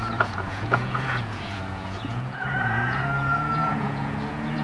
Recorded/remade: remade